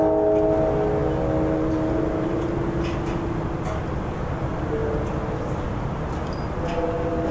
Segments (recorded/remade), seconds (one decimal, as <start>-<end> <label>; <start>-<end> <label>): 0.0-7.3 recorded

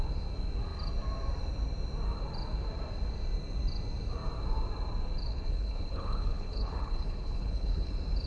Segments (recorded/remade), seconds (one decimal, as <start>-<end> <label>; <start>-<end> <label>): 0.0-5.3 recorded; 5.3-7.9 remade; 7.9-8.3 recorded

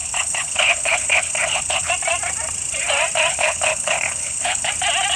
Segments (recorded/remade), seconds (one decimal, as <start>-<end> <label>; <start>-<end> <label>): 0.0-1.9 remade; 1.9-3.3 recorded; 3.3-4.7 remade; 4.7-5.2 recorded

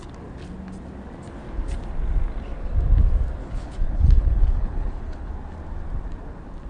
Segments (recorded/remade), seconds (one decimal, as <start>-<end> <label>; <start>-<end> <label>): 0.0-3.4 recorded; 3.4-5.3 remade; 5.3-6.7 recorded